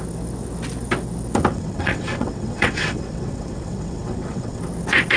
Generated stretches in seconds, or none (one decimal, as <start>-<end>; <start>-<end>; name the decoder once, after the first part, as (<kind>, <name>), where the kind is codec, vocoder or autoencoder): 1.5-4.6 (vocoder, WaveNeXt)